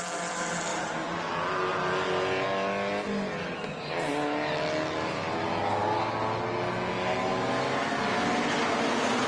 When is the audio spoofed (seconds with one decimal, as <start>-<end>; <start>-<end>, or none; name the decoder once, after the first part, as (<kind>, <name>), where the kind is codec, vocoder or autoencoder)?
0.7-1.3 (vocoder, BigVGAN v2)